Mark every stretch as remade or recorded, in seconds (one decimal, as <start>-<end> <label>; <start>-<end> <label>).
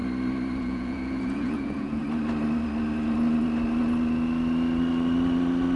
0.0-0.6 recorded; 0.6-2.0 remade; 2.0-5.8 recorded